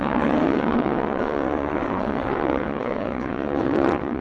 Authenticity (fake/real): fake